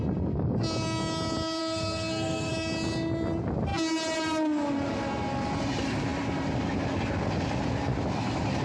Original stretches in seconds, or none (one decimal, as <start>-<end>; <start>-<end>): 0.0-1.6; 2.5-8.6